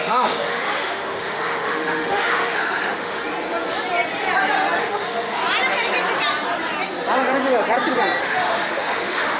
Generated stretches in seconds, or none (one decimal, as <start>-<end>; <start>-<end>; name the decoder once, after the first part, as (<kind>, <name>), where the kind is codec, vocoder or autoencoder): 0.0-3.2 (autoencoder, DAC-VAE); 4.8-5.4; 8.2-9.4